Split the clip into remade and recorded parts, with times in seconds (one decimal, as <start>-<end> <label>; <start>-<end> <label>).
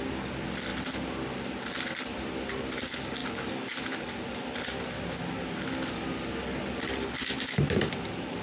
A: 0.0-8.4 recorded